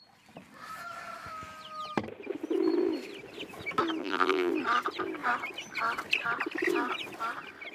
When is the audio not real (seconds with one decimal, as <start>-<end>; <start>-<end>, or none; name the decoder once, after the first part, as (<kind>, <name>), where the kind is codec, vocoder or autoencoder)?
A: 4.0-4.5 (vocoder, BigVGAN v2)